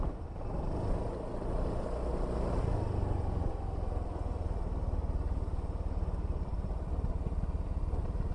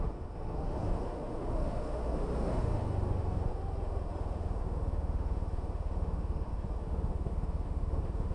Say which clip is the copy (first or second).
second